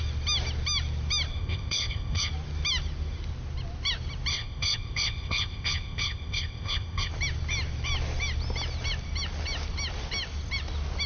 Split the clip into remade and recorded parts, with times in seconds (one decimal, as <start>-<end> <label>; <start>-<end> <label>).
0.0-1.3 recorded; 1.3-2.3 remade; 2.3-4.3 recorded; 4.3-7.1 remade; 7.1-11.1 recorded